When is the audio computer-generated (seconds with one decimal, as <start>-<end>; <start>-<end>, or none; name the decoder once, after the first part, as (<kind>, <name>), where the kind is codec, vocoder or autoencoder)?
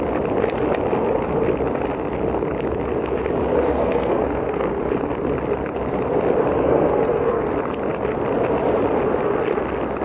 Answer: 3.7-4.8 (codec, SNAC); 6.6-7.4